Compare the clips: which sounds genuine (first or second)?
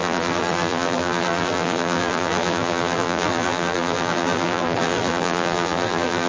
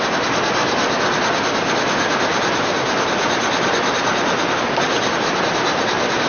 second